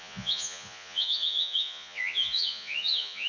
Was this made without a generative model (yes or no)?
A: no